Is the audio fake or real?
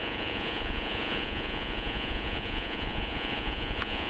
fake